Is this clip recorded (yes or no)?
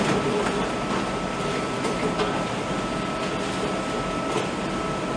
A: yes